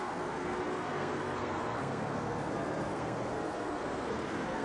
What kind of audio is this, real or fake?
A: fake